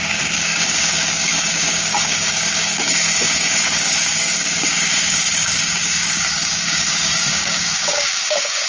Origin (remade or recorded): remade